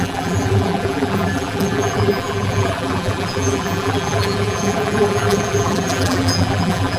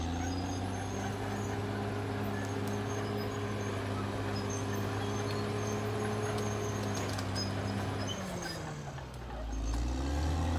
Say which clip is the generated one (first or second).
first